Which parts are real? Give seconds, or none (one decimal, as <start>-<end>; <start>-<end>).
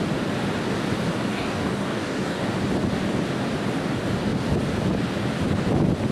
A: 0.0-1.3; 2.5-6.1